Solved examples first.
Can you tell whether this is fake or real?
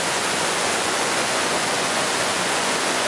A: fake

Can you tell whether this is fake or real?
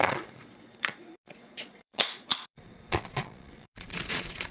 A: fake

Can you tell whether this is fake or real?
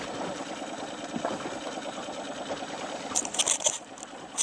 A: real